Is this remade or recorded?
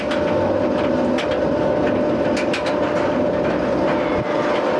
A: recorded